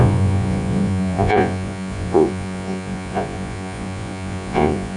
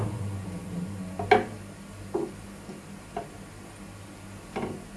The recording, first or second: second